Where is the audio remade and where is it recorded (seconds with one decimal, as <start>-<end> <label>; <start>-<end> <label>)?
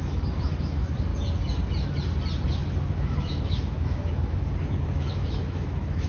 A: 0.0-1.1 remade; 1.1-2.5 recorded; 2.5-6.1 remade